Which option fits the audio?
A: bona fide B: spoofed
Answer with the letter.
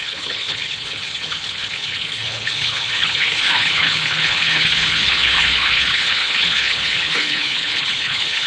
B